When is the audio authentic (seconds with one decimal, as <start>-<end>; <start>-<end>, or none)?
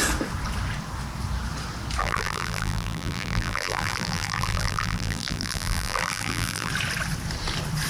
0.0-2.0; 6.7-7.9